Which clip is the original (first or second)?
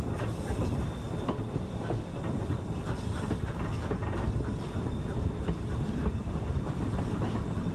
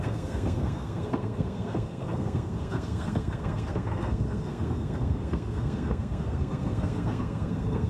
first